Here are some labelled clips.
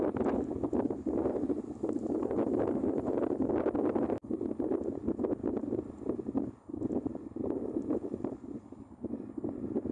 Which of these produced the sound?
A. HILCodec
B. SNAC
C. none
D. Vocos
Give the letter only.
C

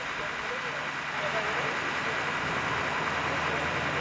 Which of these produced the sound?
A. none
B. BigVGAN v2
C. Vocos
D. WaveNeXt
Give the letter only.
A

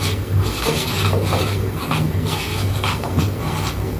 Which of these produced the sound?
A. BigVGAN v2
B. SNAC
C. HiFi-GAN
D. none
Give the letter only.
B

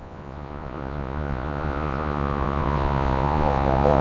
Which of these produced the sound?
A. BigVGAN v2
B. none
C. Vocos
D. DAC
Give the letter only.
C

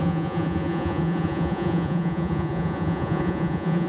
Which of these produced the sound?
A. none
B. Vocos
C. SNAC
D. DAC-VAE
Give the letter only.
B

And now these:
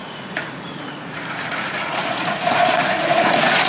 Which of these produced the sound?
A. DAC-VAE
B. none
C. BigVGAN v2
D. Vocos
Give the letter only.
D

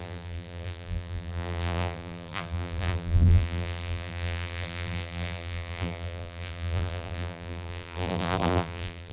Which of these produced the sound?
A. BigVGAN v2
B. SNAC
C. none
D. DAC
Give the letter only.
A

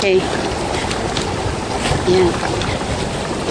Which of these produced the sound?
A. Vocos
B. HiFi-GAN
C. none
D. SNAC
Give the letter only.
C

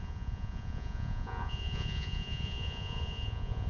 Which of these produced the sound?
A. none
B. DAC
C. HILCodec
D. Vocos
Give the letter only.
D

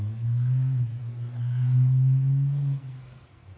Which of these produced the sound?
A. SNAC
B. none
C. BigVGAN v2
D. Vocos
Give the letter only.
A